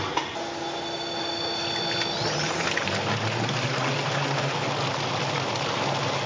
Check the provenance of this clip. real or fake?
real